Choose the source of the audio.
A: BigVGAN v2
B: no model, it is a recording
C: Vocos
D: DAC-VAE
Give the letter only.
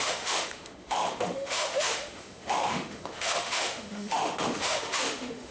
D